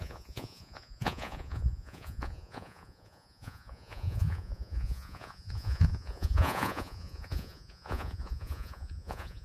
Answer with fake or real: fake